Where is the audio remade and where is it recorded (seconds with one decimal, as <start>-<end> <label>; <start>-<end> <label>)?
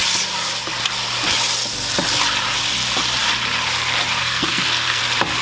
0.0-4.2 recorded; 4.2-5.0 remade; 5.0-5.4 recorded